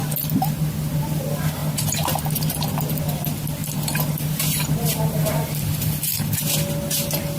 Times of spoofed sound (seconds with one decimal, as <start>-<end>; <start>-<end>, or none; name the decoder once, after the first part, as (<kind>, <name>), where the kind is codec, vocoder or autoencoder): 3.6-6.4 (vocoder, BigVGAN v2)